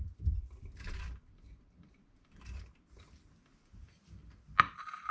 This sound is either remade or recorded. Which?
recorded